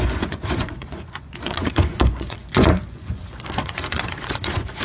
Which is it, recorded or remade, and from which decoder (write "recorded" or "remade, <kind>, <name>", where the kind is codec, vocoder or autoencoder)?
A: remade, vocoder, Vocos